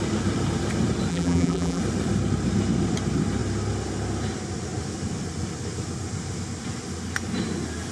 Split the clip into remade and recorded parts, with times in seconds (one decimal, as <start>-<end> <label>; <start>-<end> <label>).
0.0-1.1 recorded; 1.1-1.8 remade; 1.8-7.9 recorded